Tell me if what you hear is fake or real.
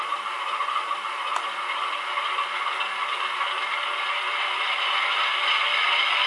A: real